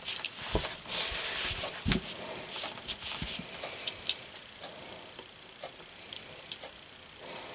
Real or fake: fake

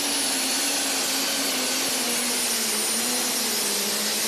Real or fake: real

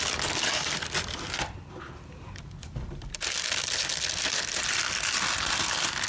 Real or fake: real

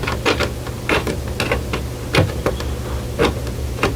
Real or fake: real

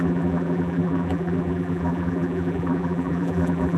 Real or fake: fake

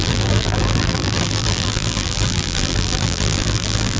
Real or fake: fake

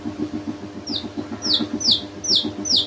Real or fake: real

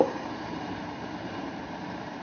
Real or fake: fake